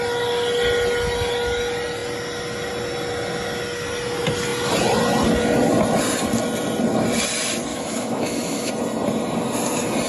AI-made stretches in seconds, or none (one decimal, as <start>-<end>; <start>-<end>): 7.7-8.7